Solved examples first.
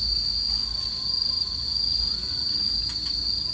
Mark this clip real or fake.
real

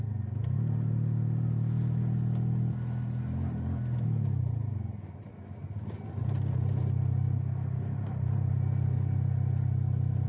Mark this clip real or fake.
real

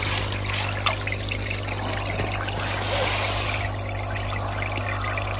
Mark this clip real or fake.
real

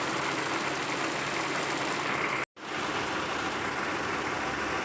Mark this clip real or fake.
real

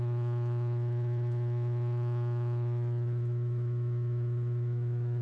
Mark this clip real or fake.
fake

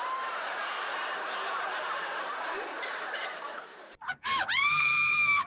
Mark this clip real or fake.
fake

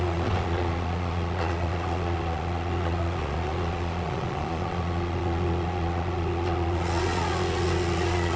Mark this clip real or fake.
fake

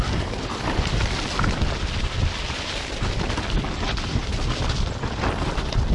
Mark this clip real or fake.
real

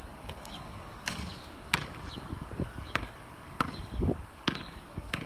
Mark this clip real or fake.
fake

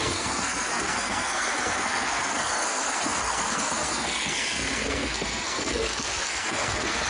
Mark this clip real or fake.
fake